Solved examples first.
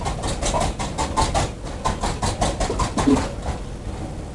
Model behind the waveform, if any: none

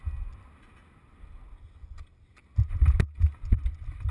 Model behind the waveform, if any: none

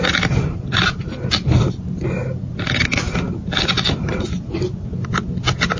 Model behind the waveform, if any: none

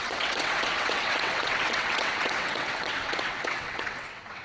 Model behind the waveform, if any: vocoder, WaveNeXt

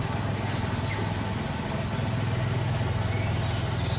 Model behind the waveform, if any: none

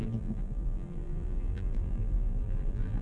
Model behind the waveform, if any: vocoder, BigVGAN v2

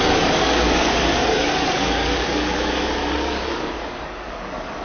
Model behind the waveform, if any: codec, DAC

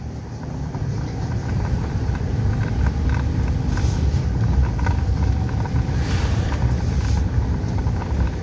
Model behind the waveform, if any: vocoder, BigVGAN v2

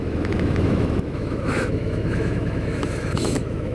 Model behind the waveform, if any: autoencoder, DAC-VAE